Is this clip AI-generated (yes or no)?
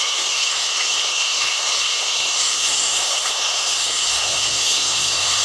yes